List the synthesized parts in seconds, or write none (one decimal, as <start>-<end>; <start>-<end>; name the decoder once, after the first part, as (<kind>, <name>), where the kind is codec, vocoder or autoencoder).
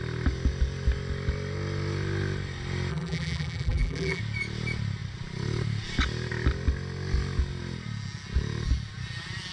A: 2.9-4.2 (vocoder, BigVGAN v2)